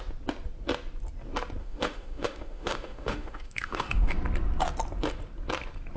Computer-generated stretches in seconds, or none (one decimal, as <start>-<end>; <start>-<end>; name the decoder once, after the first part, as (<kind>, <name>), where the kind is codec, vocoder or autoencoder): 1.6-4.1 (autoencoder, DAC-VAE)